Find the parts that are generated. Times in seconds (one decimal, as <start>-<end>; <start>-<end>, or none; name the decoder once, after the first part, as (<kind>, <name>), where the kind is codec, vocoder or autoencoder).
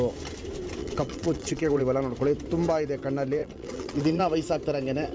0.8-1.8 (vocoder, WaveNeXt); 3.4-4.2